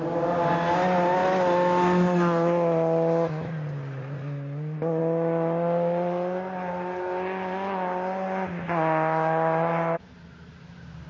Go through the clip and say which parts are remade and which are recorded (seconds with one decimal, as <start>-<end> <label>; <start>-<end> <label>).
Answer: 0.0-11.1 recorded